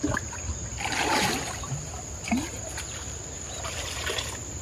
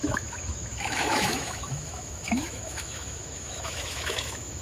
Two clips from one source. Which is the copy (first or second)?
second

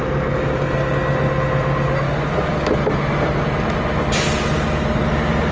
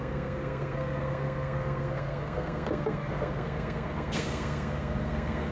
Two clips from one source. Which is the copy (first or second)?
second